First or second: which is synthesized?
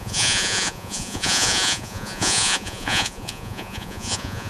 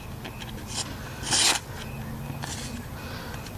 first